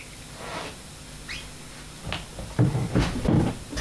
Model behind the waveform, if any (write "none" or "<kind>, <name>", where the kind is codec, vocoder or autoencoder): none